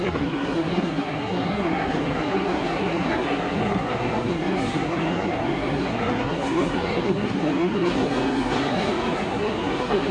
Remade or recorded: remade